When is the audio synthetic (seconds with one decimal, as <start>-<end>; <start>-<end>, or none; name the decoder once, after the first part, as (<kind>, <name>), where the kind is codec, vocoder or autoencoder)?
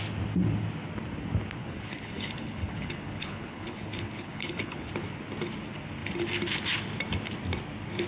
1.6-4.9 (codec, HILCodec)